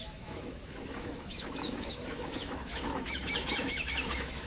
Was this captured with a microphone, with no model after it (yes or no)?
no